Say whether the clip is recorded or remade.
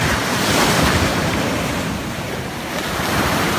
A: remade